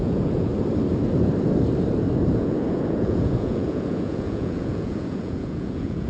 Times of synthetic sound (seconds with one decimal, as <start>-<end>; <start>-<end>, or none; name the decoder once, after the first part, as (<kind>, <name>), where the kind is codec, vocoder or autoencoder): 0.0-0.5 (vocoder, Vocos); 2.3-6.1